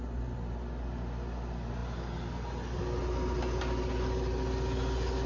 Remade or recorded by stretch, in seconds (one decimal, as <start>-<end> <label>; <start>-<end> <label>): 0.0-5.3 recorded